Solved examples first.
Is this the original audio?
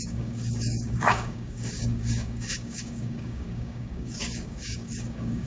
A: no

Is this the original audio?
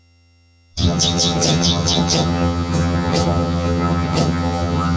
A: no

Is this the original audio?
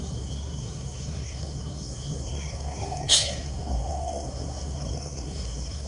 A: no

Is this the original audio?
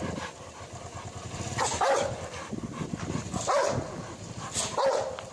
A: yes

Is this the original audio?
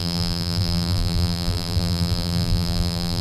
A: no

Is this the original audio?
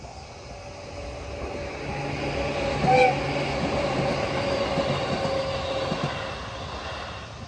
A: yes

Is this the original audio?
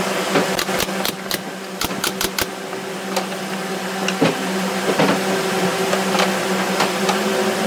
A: yes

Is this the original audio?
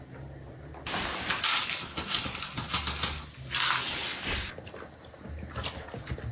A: yes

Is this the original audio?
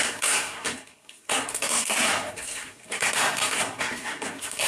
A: no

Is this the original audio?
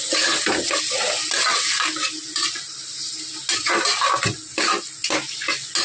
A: yes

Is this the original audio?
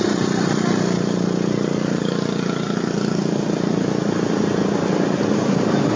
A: yes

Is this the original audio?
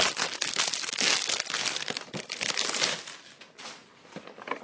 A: yes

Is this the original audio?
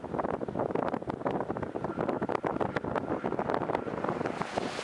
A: yes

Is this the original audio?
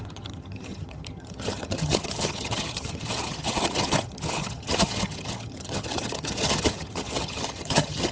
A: no